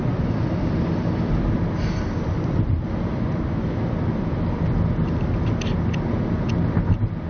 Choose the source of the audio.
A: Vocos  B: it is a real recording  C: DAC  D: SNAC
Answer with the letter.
B